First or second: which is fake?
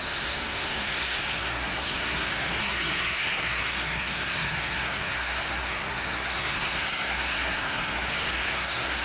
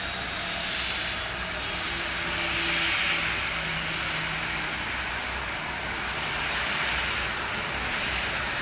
first